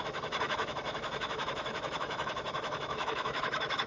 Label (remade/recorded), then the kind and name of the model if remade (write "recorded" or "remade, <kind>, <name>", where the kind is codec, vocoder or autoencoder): remade, autoencoder, DAC-VAE